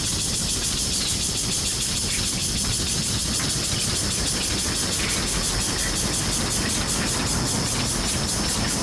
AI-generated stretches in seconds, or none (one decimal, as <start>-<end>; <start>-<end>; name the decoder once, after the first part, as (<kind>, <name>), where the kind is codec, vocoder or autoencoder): none